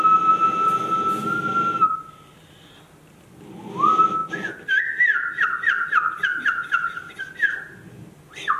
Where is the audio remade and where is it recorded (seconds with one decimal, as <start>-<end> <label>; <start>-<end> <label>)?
0.0-8.6 recorded